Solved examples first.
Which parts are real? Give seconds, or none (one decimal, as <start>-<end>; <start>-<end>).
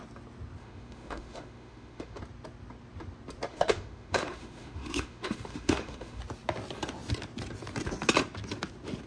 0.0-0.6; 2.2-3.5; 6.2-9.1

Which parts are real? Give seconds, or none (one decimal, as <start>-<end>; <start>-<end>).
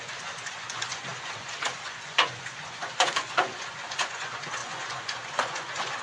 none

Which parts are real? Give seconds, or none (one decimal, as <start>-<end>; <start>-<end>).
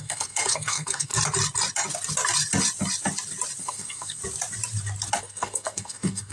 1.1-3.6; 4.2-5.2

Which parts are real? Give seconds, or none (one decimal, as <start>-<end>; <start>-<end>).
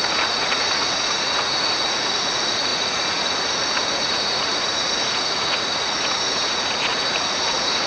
none